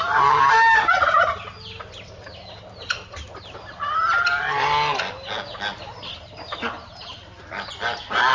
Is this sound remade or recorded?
recorded